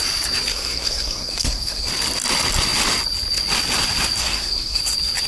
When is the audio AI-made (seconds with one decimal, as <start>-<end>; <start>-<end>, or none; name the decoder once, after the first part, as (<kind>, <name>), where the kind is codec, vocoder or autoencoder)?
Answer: 0.5-1.9 (codec, SNAC); 4.2-4.8